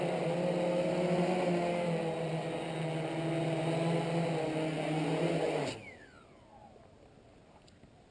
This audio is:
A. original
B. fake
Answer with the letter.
A